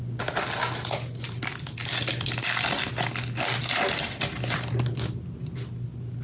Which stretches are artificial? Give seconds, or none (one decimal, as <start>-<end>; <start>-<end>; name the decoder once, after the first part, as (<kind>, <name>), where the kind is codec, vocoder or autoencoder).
none